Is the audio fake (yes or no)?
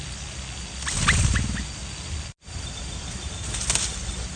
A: no